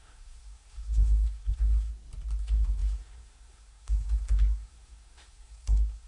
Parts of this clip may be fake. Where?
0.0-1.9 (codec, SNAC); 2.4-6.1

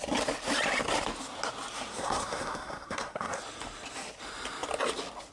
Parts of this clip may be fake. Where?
1.9-3.4 (codec, SNAC)

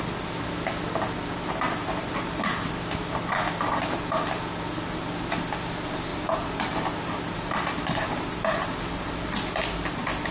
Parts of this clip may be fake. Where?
1.8-2.7 (vocoder, BigVGAN v2); 6.1-9.3

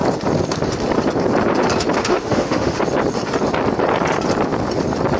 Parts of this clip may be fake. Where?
2.0-2.8 (autoencoder, DAC-VAE)

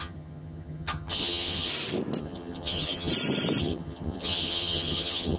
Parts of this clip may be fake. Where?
0.0-1.7 (vocoder, HiFi-GAN); 2.2-3.1; 3.6-5.4

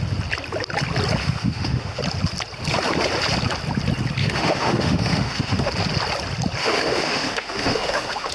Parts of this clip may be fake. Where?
1.2-2.0 (autoencoder, DAC-VAE); 4.2-5.7; 6.6-8.3

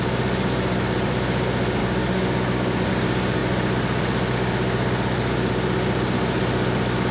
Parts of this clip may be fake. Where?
1.8-2.9 (codec, DAC)